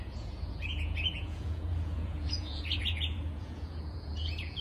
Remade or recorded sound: remade